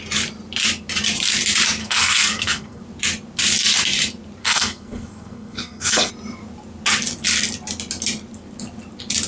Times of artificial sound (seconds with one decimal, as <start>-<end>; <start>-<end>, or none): 1.8-2.8; 4.4-6.1